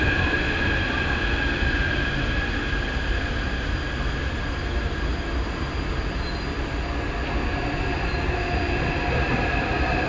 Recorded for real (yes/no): yes